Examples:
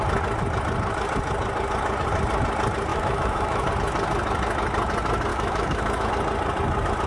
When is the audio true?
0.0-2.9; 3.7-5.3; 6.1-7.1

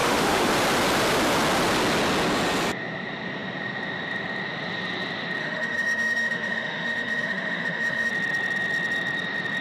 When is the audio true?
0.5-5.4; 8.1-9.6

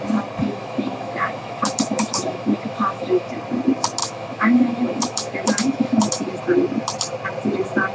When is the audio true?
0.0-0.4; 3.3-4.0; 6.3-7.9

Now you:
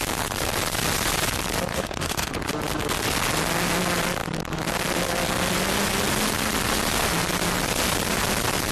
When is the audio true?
0.0-1.7; 2.3-8.7